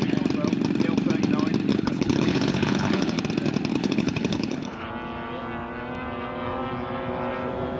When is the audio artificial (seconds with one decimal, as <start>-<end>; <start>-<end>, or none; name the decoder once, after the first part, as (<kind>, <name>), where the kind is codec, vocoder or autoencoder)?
1.7-3.2 (codec, HILCodec); 3.7-4.9

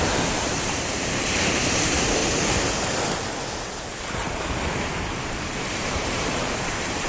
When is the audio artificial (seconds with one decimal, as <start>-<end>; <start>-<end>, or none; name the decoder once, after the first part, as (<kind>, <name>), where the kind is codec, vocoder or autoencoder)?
0.0-2.2 (vocoder, BigVGAN v2); 5.0-7.1

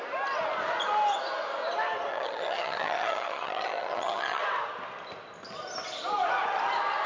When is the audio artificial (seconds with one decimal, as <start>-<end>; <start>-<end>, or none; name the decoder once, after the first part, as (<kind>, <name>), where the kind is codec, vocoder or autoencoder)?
2.1-4.4 (vocoder, HiFi-GAN)